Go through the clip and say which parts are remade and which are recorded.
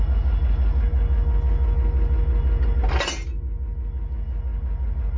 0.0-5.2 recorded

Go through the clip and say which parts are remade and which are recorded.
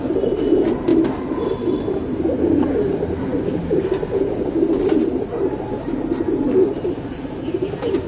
0.0-8.1 recorded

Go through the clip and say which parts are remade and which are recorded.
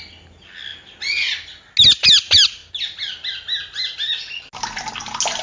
0.0-5.4 recorded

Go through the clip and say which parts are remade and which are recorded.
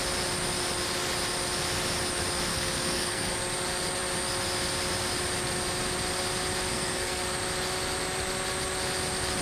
0.0-2.5 recorded; 2.5-3.3 remade; 3.3-6.7 recorded; 6.7-7.2 remade; 7.2-9.4 recorded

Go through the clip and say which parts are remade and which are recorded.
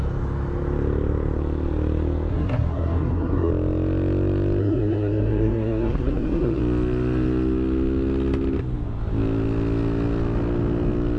0.0-2.3 recorded; 2.3-3.5 remade; 3.5-4.6 recorded; 4.6-6.6 remade; 6.6-11.2 recorded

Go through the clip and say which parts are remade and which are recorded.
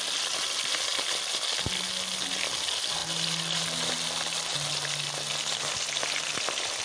0.0-6.8 recorded